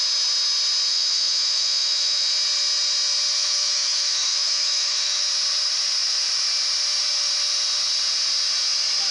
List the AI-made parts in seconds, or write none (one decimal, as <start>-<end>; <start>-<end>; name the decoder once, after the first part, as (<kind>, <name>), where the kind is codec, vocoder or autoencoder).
0.9-2.3 (autoencoder, DAC-VAE); 3.4-5.3